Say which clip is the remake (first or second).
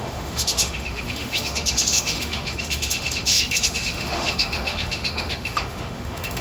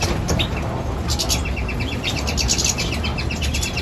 first